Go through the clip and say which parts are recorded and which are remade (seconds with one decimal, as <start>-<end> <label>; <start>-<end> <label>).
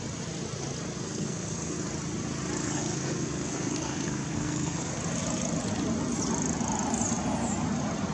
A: 0.0-1.0 recorded; 1.0-1.7 remade; 1.7-2.6 recorded; 2.6-5.0 remade; 5.0-8.1 recorded